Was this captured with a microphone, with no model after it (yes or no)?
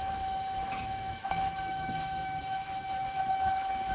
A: no